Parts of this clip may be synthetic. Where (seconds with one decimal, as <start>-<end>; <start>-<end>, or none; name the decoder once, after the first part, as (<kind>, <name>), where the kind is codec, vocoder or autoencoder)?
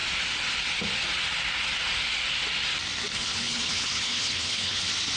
3.1-4.8 (codec, HILCodec)